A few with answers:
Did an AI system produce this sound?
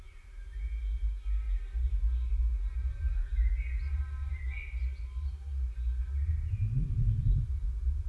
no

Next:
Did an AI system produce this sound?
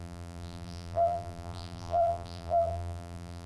yes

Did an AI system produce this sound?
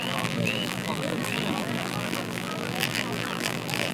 yes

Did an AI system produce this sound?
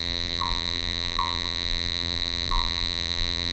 yes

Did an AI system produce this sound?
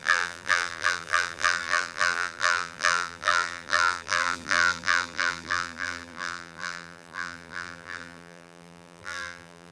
yes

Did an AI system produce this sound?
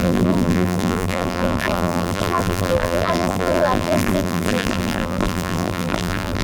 yes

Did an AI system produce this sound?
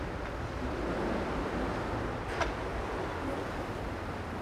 no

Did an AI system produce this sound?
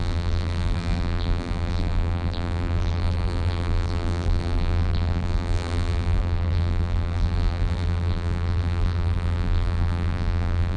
yes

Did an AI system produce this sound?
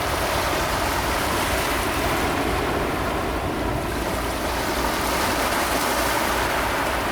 yes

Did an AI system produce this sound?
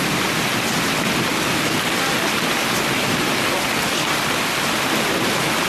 no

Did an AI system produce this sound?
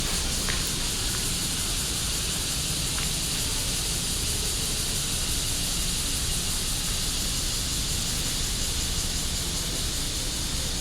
no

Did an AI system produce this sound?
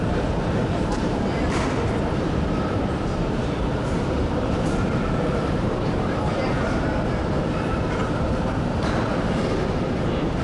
yes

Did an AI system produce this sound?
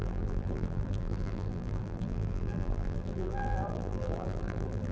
yes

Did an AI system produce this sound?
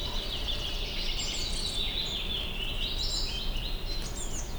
no